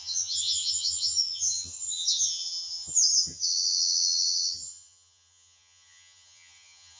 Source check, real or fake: fake